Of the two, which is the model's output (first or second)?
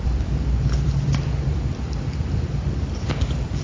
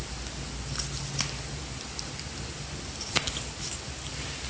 first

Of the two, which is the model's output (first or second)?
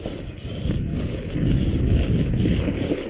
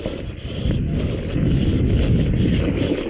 first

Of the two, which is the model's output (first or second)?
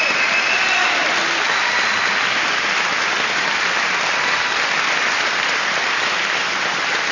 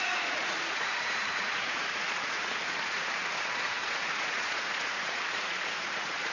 second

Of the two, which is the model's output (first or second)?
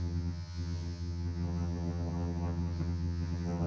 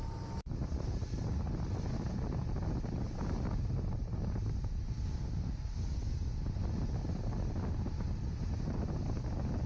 first